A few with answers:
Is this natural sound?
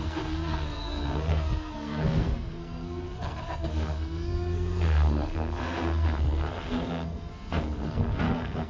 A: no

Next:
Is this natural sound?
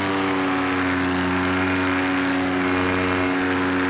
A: yes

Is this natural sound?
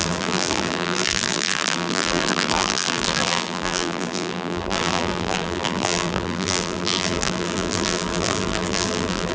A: no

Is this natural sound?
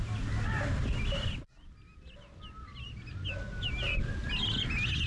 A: yes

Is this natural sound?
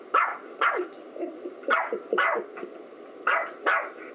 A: yes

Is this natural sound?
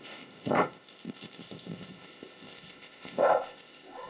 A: no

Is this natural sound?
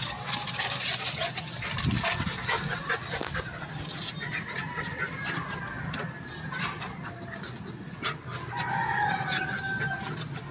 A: yes